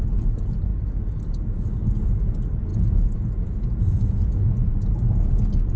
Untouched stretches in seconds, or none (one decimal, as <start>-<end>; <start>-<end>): 0.0-2.7; 4.8-5.8